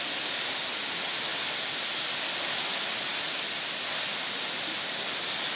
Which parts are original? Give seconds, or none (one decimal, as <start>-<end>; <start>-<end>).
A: 0.0-5.6